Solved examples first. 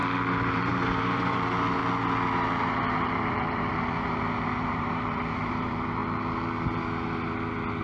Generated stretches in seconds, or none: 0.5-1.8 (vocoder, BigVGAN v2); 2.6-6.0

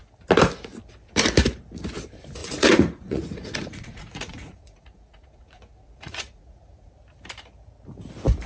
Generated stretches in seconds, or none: 2.4-6.9 (vocoder, Vocos)